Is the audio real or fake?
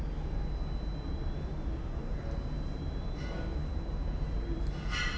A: real